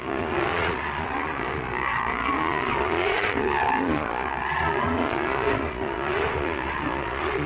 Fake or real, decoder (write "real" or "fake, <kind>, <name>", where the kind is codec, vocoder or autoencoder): fake, vocoder, Vocos